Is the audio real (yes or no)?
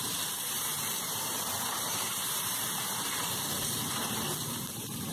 no